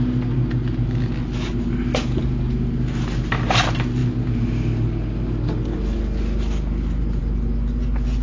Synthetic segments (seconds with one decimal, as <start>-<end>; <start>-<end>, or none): none